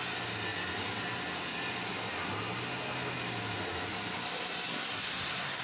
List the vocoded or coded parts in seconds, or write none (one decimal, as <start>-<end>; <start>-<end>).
4.7-5.6